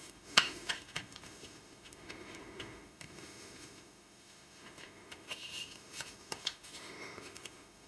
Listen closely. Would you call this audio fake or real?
fake